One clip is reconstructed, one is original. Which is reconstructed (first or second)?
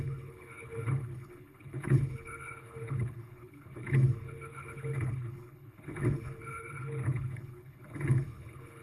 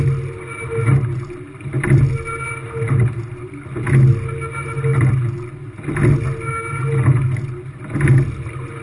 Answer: first